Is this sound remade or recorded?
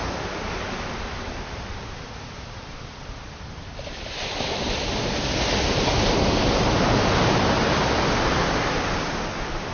remade